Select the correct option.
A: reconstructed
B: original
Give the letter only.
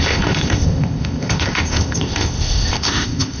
A